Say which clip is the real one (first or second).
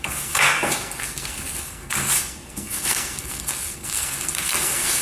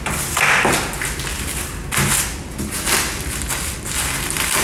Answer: second